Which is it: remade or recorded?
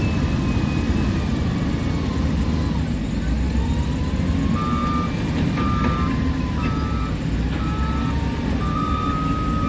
recorded